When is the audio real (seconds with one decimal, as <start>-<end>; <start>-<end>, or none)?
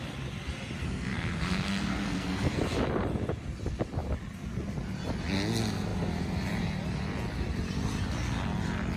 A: 0.0-0.8; 2.6-9.0